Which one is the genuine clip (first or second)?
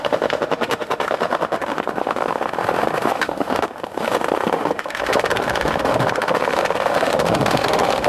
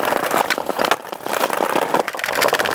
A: second